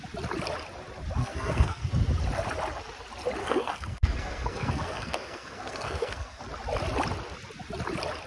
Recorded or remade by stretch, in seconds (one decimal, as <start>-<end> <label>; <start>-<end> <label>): 0.0-1.2 recorded; 1.2-1.9 remade; 1.9-3.4 recorded; 3.4-6.4 remade; 6.4-8.3 recorded